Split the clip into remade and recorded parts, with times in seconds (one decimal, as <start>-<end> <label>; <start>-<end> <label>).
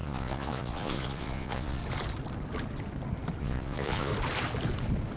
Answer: 0.0-1.8 remade; 1.8-3.4 recorded; 3.4-4.1 remade; 4.1-5.2 recorded